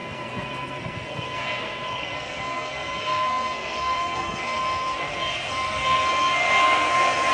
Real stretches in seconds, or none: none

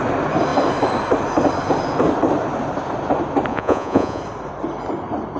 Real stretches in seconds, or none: 0.0-3.5; 4.2-5.4

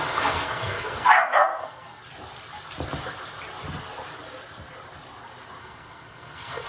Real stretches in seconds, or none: 2.0-5.6

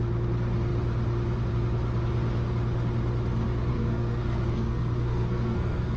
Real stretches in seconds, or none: 0.0-3.7

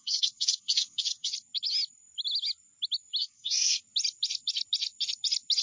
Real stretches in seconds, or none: 1.3-3.2; 3.8-5.6

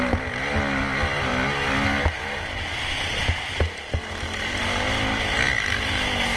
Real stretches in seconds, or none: 0.0-6.4